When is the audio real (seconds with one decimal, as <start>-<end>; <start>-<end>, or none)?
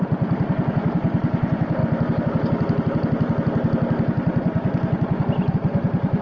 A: 1.8-5.5